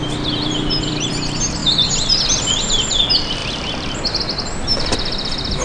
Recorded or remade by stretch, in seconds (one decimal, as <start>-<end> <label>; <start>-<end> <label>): 0.0-1.1 remade; 1.1-1.6 recorded; 1.6-3.0 remade; 3.0-3.4 recorded; 3.4-4.2 remade; 4.2-5.6 recorded